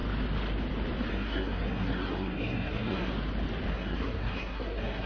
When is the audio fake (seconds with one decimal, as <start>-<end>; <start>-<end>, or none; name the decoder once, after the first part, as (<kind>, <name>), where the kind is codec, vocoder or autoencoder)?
1.1-3.1 (codec, SNAC); 3.7-5.1